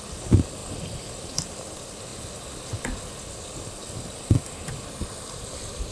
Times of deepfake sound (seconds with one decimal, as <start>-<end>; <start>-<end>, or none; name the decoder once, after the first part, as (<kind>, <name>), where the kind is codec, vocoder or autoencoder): none